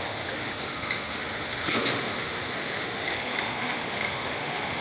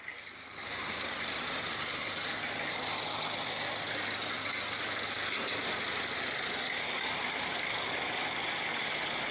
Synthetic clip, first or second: first